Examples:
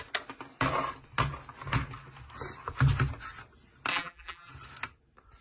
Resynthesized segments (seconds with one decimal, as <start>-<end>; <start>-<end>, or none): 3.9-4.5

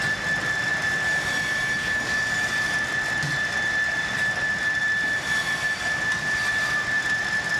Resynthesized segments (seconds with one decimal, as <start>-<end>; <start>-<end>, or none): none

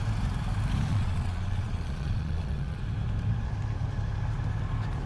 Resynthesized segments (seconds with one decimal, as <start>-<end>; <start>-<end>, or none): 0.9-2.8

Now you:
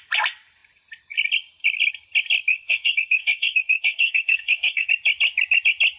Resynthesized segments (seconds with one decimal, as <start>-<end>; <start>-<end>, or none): 2.5-4.9